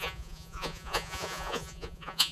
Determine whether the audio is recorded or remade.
remade